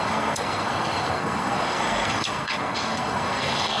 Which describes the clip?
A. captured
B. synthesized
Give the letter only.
B